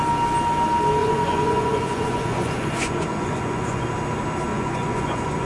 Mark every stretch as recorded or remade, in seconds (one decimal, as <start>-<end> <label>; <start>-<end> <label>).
0.0-1.0 recorded; 1.0-3.9 remade; 3.9-4.5 recorded; 4.5-5.5 remade